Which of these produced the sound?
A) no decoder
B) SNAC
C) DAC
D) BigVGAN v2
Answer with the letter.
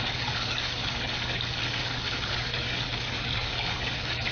C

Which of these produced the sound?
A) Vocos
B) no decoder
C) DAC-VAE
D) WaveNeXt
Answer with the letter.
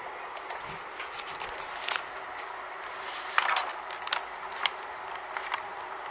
B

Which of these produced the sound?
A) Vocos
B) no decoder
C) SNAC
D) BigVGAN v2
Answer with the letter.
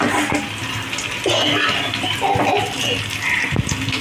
B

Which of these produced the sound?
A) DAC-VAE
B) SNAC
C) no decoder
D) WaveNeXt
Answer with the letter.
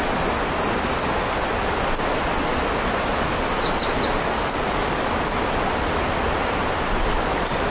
C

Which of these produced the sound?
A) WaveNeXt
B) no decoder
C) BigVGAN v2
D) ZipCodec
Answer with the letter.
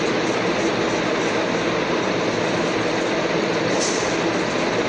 B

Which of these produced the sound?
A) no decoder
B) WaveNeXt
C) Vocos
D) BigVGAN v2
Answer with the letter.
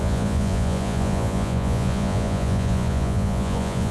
C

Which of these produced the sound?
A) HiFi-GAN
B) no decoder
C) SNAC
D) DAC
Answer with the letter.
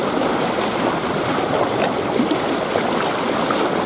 B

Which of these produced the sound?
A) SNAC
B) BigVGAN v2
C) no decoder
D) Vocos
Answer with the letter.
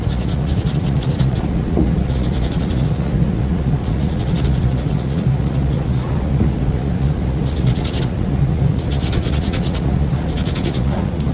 D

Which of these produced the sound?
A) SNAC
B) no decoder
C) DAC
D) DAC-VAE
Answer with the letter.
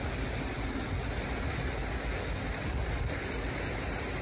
B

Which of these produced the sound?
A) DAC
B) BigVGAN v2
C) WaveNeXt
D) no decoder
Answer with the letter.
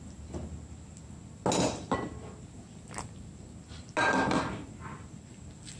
D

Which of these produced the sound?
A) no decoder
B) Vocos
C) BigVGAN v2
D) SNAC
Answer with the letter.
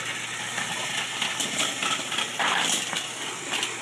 A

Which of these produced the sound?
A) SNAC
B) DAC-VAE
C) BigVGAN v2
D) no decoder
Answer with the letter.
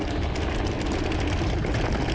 D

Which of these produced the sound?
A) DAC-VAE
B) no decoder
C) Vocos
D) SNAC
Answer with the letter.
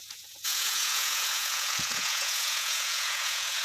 C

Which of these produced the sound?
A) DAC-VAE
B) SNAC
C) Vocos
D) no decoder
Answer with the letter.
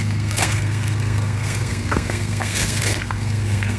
B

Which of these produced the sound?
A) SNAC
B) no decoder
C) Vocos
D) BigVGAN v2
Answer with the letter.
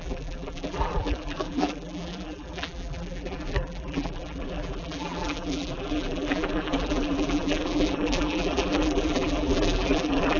D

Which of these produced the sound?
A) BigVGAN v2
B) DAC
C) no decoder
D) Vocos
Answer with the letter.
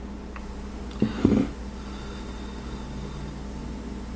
C